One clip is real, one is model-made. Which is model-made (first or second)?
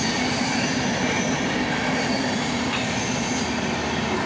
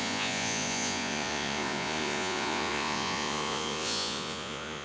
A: second